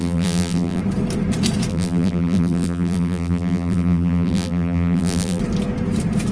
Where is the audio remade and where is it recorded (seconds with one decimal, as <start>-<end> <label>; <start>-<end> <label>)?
0.0-0.8 remade; 0.8-1.7 recorded; 1.7-5.4 remade; 5.4-6.3 recorded

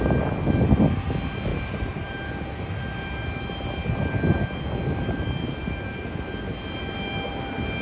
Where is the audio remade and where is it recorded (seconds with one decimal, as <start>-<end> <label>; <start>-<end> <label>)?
0.0-1.5 recorded; 1.5-2.8 remade; 2.8-7.8 recorded

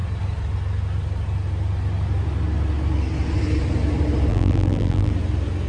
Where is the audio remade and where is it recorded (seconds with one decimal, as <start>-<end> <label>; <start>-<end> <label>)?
0.0-4.3 recorded; 4.3-5.1 remade; 5.1-5.7 recorded

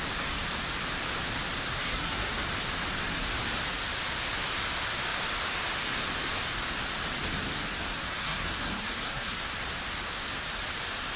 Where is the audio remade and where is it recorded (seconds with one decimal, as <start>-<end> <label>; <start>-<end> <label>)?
0.0-1.8 recorded; 1.8-2.3 remade; 2.3-8.2 recorded; 8.2-9.4 remade; 9.4-11.2 recorded

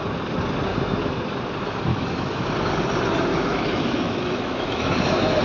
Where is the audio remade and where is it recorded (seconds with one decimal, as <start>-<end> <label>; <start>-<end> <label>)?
0.0-0.7 recorded; 0.7-1.4 remade; 1.4-1.9 recorded; 1.9-2.5 remade; 2.5-3.3 recorded; 3.3-5.4 remade

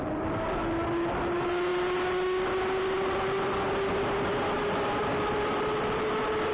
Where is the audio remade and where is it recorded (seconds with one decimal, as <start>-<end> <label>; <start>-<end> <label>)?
0.0-6.5 recorded